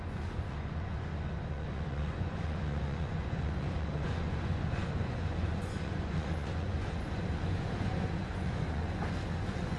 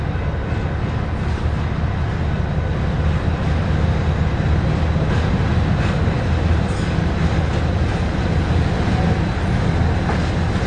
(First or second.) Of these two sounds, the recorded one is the second